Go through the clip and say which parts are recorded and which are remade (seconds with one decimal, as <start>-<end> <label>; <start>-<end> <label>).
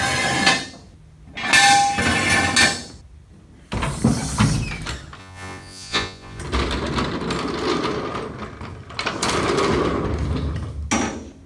0.0-5.2 recorded; 5.2-6.4 remade; 6.4-11.5 recorded